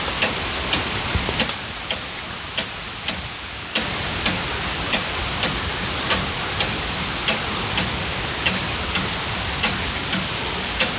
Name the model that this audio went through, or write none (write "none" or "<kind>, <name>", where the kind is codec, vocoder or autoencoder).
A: none